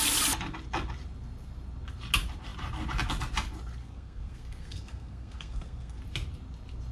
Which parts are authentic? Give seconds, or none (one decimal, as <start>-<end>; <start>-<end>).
0.0-3.8; 6.0-6.9